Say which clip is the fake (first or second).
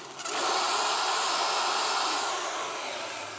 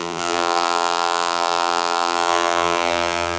second